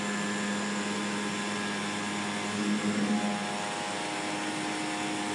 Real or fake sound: real